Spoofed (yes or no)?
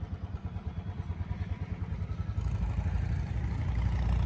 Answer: no